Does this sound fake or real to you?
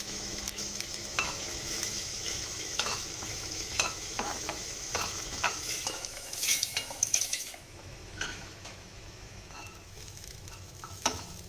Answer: fake